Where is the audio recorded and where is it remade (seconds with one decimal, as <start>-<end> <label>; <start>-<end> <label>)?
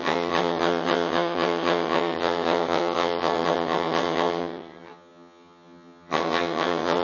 0.0-7.0 remade